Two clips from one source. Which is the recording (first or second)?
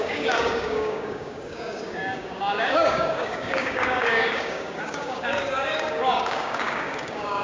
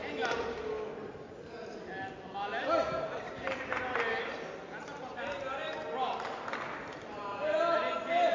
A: second